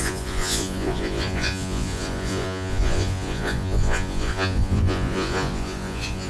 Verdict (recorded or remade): remade